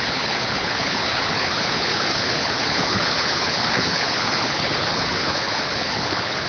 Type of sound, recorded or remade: remade